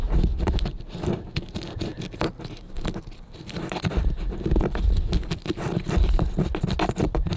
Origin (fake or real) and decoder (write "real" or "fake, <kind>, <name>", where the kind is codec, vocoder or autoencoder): real